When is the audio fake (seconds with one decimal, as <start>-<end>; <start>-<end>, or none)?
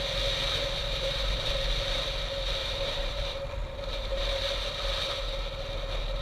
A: 0.8-1.5; 2.6-3.2; 3.6-4.2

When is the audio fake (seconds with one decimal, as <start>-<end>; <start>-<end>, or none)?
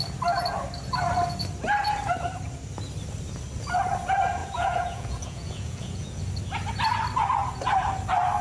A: 4.4-6.2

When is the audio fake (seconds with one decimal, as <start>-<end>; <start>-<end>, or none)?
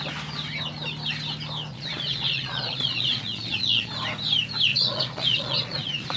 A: 1.7-3.9; 4.7-6.2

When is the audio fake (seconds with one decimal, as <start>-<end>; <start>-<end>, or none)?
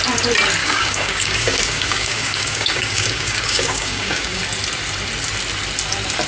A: 0.6-4.4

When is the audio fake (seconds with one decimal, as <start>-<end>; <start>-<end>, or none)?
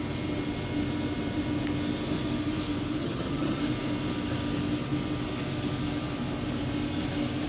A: 3.0-3.6